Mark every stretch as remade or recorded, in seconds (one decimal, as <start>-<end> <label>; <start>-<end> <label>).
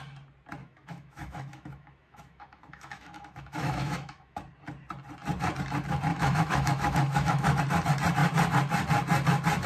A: 0.0-0.6 recorded; 0.6-4.4 remade; 4.4-6.1 recorded; 6.1-7.6 remade; 7.6-9.7 recorded